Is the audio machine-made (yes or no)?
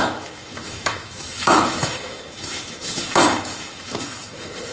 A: yes